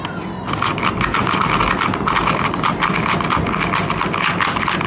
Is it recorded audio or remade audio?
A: recorded